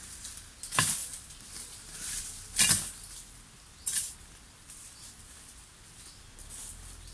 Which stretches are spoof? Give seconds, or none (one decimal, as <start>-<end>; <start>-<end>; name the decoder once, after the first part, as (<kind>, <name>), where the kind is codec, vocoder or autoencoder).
none